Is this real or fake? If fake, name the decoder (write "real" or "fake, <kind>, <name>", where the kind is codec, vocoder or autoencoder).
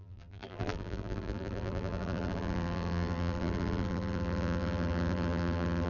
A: fake, vocoder, BigVGAN v2